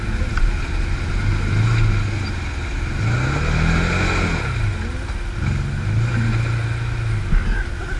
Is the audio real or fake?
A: real